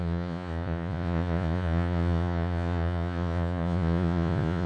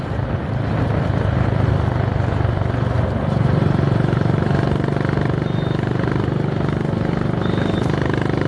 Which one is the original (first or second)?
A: second